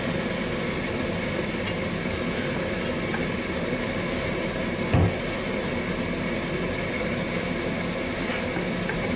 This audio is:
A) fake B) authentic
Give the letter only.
B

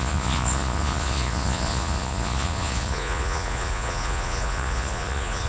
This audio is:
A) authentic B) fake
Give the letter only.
B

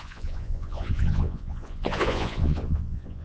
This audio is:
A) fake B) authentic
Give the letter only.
A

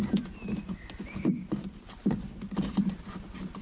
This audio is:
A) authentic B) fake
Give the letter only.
A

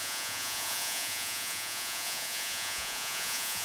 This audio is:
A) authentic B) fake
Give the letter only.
B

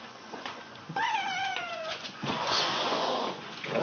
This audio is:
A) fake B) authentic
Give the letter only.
A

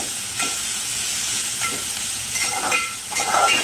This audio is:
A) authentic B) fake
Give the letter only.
B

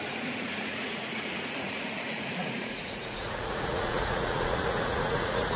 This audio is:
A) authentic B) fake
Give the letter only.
B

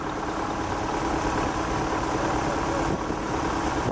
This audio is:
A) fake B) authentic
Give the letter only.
B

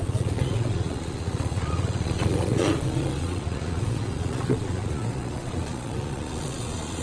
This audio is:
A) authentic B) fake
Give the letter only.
B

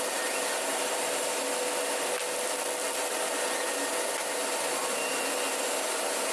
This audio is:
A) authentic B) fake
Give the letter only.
A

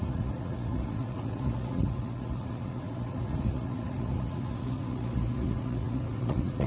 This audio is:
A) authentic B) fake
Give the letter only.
B